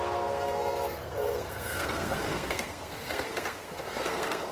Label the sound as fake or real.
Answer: fake